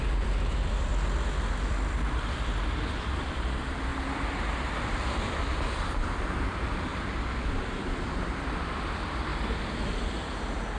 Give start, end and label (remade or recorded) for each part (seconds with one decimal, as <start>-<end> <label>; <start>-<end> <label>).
0.0-0.9 remade; 0.9-1.5 recorded; 1.5-3.9 remade; 3.9-4.7 recorded; 4.7-9.3 remade; 9.3-10.2 recorded; 10.2-10.8 remade